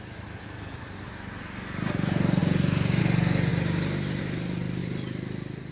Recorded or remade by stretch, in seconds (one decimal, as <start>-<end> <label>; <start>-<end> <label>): 0.0-5.7 recorded